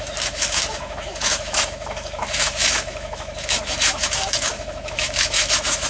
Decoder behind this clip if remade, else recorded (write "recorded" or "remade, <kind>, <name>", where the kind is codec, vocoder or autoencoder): remade, autoencoder, DAC-VAE